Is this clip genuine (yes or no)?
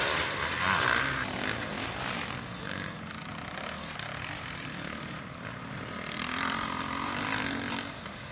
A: yes